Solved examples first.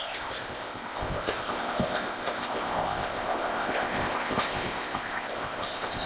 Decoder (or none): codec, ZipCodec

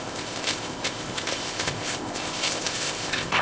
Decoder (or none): codec, ZipCodec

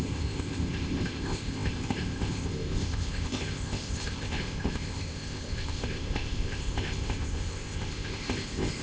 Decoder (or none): codec, ZipCodec